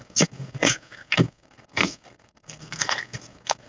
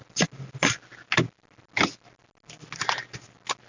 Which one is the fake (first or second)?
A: first